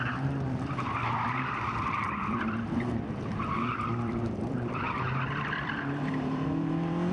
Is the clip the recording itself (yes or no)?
no